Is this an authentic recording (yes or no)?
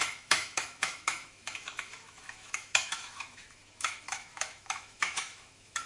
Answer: no